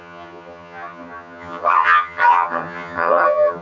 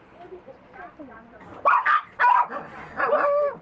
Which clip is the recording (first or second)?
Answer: second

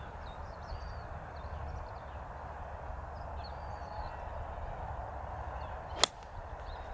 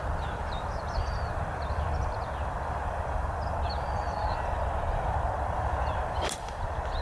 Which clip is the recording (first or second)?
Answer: first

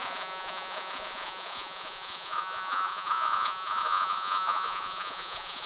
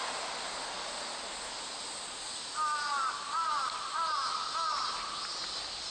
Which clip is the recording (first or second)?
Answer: second